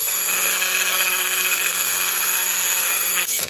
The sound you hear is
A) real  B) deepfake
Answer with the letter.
B